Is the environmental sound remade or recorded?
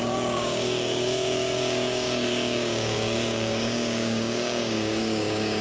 remade